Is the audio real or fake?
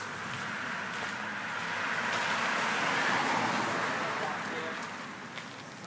real